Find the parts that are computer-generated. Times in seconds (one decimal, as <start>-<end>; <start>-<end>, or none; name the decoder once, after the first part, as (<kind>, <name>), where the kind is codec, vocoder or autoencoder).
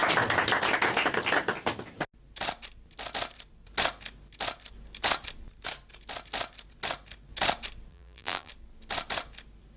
7.9-8.5 (vocoder, BigVGAN v2)